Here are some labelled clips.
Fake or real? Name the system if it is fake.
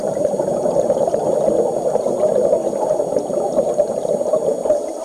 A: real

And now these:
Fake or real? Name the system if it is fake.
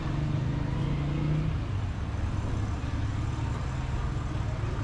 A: real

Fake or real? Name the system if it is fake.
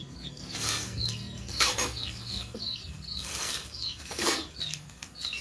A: fake, codec, SNAC